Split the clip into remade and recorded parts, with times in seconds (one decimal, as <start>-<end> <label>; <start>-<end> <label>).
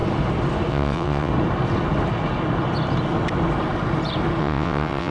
0.0-0.7 recorded; 0.7-1.3 remade; 1.3-4.4 recorded; 4.4-5.1 remade